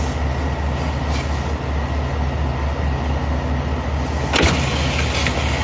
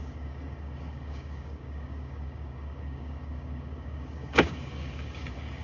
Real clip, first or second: first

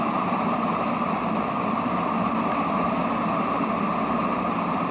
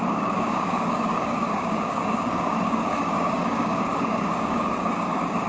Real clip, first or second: first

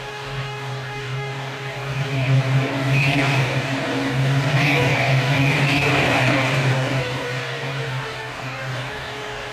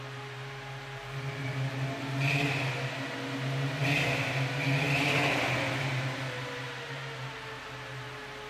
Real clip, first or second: second